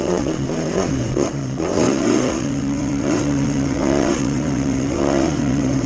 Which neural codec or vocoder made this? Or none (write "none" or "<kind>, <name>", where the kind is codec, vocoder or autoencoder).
vocoder, WaveNeXt